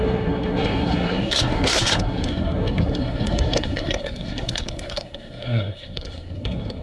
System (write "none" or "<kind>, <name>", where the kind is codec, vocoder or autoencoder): codec, SNAC